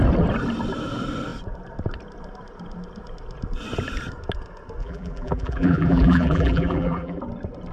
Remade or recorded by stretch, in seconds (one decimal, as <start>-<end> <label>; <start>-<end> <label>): 0.0-4.8 recorded; 4.8-7.2 remade; 7.2-7.7 recorded